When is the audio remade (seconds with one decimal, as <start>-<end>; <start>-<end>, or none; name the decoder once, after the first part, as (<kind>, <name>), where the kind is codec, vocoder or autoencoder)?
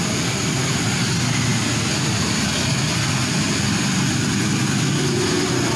none